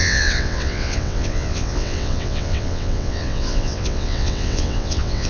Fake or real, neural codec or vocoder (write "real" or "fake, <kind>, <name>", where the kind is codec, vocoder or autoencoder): fake, vocoder, WaveNeXt